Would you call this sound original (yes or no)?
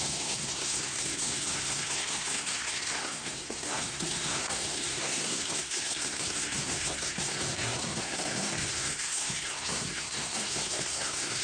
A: no